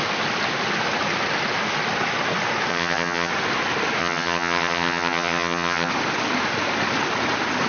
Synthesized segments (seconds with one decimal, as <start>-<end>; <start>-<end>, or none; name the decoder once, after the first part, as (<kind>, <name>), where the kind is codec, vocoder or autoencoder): 2.7-3.3 (vocoder, HiFi-GAN); 4.0-5.9

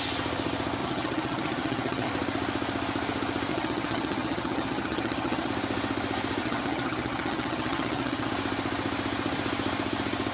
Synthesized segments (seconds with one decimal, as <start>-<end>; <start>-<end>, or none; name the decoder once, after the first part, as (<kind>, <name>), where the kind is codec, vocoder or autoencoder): 0.8-2.1 (vocoder, HiFi-GAN); 3.5-5.5; 6.4-8.3

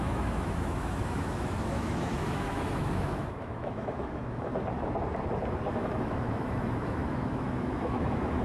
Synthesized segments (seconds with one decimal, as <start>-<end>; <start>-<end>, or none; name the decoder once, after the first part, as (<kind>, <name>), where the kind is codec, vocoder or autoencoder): 0.0-4.5 (autoencoder, DAC-VAE); 5.7-8.4

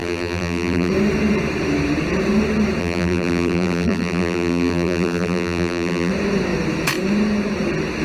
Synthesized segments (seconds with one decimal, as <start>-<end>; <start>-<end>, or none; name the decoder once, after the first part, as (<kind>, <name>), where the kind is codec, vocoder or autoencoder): 0.0-0.9 (vocoder, BigVGAN v2); 2.8-6.1